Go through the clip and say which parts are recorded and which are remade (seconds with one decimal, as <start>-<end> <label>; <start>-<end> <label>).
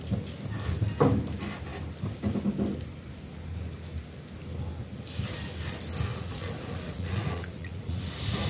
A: 0.0-6.1 recorded; 6.1-8.1 remade; 8.1-8.5 recorded